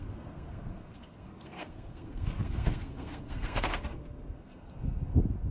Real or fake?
fake